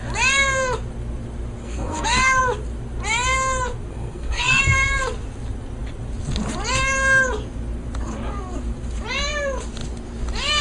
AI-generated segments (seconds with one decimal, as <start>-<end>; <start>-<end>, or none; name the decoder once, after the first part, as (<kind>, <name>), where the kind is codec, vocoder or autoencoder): 1.6-2.4 (codec, SNAC); 3.9-4.6